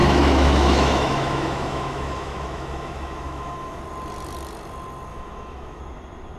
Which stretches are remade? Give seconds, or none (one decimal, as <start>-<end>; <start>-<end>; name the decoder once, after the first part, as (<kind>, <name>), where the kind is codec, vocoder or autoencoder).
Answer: 0.0-3.8 (autoencoder, DAC-VAE); 5.1-5.8

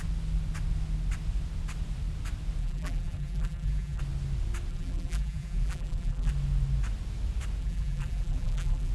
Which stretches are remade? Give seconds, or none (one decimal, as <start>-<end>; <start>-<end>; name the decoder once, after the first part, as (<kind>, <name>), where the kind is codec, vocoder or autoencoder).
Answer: 2.6-4.0 (vocoder, BigVGAN v2); 4.7-6.3; 7.6-8.9

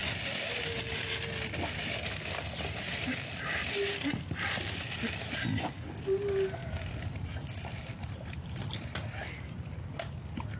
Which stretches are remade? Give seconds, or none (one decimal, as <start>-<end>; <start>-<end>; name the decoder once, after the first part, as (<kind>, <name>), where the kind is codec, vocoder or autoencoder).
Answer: 6.6-8.6 (vocoder, BigVGAN v2)

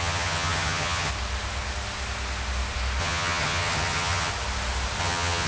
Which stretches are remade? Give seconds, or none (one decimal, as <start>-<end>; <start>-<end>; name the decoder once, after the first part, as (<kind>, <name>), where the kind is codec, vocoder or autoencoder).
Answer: 0.0-1.1 (vocoder, HiFi-GAN); 3.0-4.3; 5.0-5.5

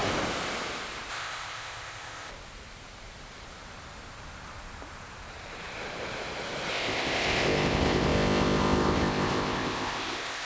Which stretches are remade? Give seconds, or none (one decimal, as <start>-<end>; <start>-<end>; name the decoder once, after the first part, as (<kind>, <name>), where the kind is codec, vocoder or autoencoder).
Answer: 1.1-2.3 (codec, ZipCodec); 6.7-10.5

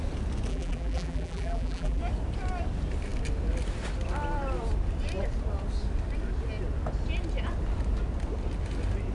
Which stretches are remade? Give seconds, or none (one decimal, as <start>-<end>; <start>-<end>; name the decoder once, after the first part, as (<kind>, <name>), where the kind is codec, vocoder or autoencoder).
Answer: 0.5-2.0 (vocoder, BigVGAN v2)

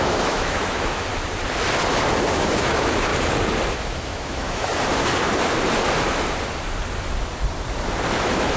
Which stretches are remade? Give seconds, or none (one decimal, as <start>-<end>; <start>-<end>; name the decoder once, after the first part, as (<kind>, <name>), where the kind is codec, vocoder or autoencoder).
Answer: 0.0-1.1 (autoencoder, DAC-VAE); 2.3-3.1; 3.7-4.7; 8.2-8.6

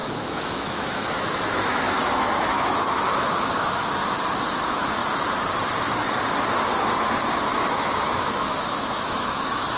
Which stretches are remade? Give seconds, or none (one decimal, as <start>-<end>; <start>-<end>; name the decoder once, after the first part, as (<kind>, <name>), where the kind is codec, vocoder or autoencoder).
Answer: 0.0-4.0 (autoencoder, DAC-VAE); 4.5-5.0; 7.7-9.8